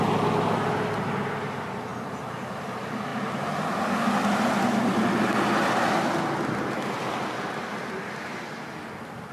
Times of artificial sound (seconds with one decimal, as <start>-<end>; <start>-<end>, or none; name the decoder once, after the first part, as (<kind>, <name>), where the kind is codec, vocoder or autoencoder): none